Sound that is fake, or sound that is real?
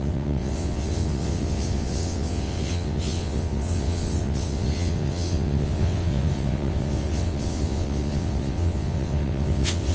fake